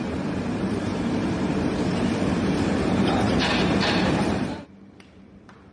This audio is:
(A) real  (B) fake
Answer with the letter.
B